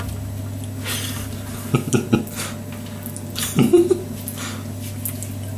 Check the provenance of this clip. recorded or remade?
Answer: recorded